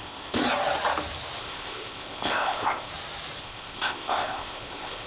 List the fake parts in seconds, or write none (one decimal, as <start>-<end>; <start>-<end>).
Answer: 0.0-0.4; 1.4-2.9; 3.4-5.1